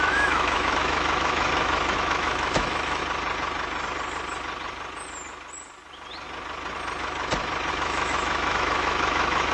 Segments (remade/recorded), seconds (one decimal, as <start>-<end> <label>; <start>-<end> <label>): 0.0-3.0 remade; 3.0-7.7 recorded; 7.7-9.5 remade